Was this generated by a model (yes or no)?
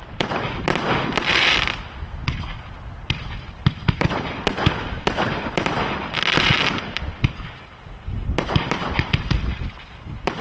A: no